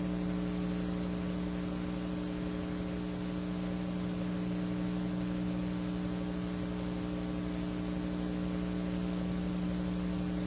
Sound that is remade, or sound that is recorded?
recorded